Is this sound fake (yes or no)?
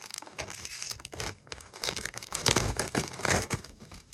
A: yes